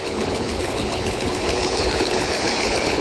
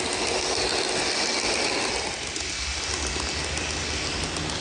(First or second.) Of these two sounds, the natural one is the second